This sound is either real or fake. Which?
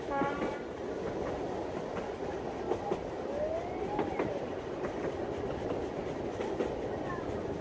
real